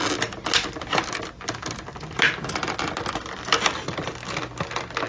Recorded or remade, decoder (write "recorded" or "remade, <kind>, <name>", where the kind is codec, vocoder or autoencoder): recorded